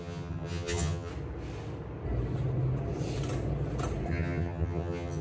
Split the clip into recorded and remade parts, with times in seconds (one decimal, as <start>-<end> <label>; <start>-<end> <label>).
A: 0.0-1.1 remade; 1.1-4.1 recorded; 4.1-5.2 remade